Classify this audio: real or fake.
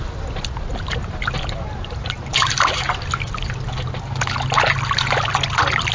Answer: real